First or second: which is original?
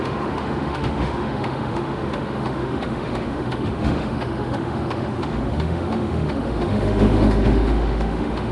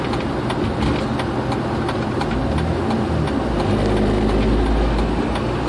second